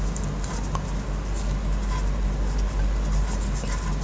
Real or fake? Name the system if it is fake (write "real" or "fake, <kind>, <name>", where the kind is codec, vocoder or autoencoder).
real